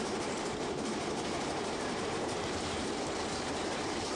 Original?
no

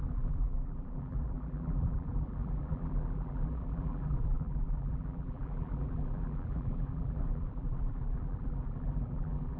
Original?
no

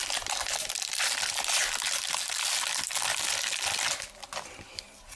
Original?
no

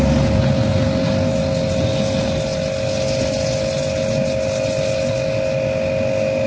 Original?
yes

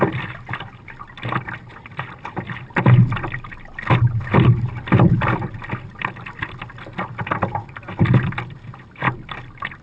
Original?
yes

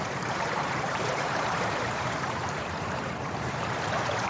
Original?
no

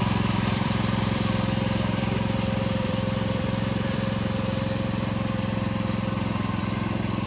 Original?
no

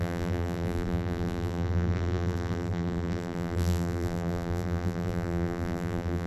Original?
no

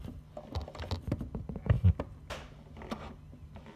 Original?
yes